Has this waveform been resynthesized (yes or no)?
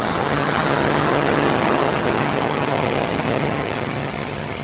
yes